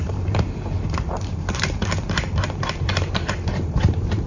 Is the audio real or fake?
fake